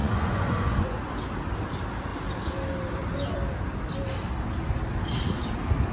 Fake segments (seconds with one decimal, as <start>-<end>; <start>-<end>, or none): 0.0-1.1